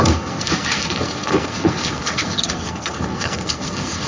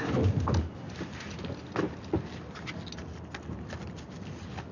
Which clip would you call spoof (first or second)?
first